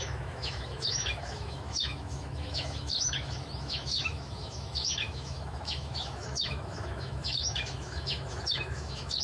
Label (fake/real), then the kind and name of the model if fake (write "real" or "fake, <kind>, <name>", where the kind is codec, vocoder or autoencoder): fake, autoencoder, DAC-VAE